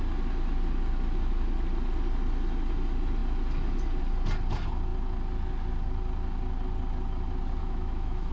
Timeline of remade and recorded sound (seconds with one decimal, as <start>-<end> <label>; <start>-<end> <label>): 0.0-7.6 recorded; 7.6-8.3 remade